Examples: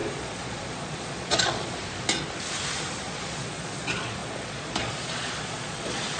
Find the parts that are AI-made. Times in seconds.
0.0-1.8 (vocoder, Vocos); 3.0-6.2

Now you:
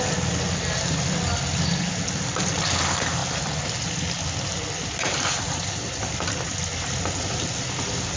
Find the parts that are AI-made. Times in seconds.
none

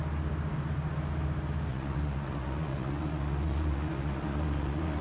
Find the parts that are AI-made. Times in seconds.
1.7-5.0 (vocoder, Vocos)

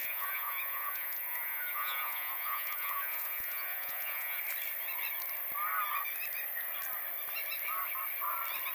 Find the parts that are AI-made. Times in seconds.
0.0-4.4 (vocoder, Vocos)

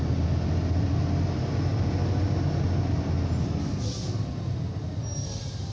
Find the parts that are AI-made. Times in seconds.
none

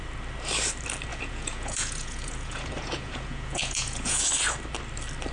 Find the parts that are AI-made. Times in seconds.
1.1-4.3 (vocoder, Vocos)

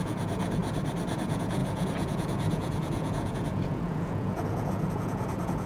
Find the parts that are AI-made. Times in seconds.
0.0-0.6 (vocoder, Vocos); 1.1-5.7

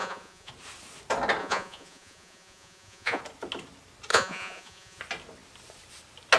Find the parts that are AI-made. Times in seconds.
0.0-0.5 (vocoder, Vocos); 1.4-3.2; 4.1-5.0